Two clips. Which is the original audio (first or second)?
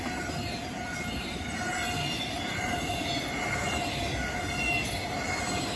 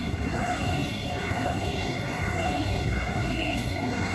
first